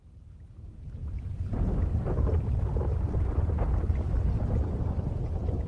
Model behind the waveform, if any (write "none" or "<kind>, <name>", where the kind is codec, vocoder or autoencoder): none